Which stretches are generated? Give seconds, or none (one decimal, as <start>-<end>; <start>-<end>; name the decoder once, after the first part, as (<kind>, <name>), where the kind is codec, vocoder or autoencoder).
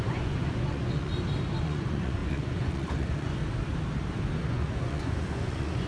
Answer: 0.0-1.1 (vocoder, Vocos); 1.6-3.4; 4.5-5.9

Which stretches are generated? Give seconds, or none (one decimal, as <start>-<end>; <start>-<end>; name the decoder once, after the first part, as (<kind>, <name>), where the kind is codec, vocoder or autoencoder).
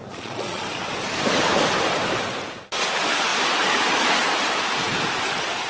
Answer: 0.0-0.6 (vocoder, Vocos)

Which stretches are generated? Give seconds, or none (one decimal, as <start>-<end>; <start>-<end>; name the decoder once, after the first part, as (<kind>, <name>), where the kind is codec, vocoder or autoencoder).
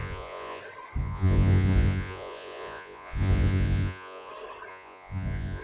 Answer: 0.0-0.6 (vocoder, Vocos); 1.0-4.3; 4.7-5.6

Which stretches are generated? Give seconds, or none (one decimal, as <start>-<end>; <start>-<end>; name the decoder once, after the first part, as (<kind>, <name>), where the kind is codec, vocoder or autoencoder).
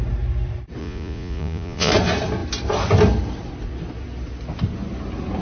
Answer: 0.8-1.9 (vocoder, Vocos)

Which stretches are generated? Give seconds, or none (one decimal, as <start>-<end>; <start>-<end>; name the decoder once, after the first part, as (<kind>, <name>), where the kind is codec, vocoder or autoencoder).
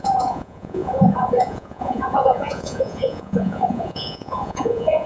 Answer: 0.0-5.1 (vocoder, Vocos)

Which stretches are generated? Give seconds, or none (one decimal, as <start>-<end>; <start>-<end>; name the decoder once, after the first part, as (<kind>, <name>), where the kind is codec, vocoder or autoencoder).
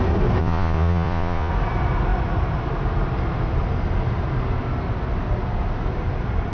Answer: 0.4-1.5 (vocoder, Vocos)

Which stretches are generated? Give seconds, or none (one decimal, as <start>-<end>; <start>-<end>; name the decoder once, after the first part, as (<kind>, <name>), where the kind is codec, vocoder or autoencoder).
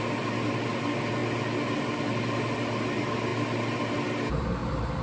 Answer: none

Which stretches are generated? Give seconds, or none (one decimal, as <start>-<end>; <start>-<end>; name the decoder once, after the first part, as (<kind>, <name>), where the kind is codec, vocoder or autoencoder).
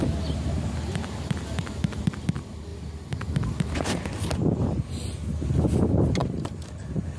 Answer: none